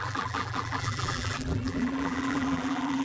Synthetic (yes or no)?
yes